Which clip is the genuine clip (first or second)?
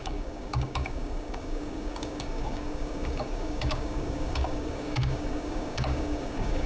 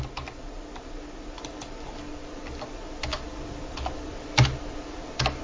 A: second